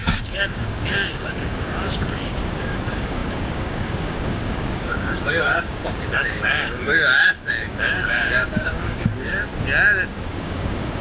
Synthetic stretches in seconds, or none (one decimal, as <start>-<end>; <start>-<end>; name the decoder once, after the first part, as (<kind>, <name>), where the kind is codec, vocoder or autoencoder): 0.0-9.5 (codec, DAC); 10.3-11.0